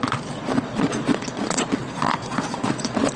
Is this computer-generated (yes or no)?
yes